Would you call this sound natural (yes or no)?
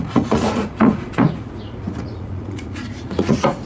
no